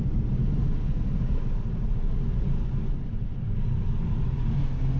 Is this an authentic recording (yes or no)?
yes